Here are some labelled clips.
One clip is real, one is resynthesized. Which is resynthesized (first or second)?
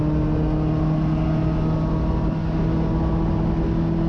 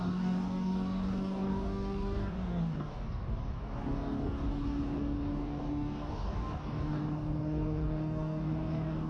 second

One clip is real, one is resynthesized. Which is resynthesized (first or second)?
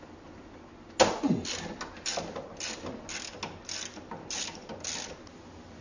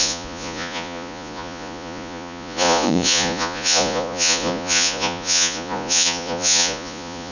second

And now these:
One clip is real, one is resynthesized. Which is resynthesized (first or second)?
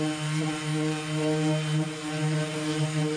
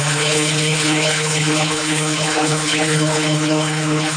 second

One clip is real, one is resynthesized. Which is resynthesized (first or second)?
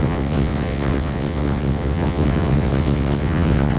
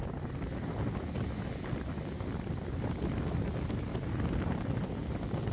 first